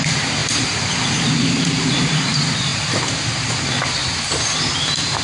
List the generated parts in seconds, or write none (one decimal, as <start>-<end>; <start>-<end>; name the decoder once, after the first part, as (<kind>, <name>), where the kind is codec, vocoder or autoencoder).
0.4-1.3 (vocoder, BigVGAN v2); 2.7-3.5; 4.0-4.5